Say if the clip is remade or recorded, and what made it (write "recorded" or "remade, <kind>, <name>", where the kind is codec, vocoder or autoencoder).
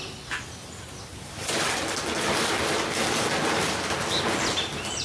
recorded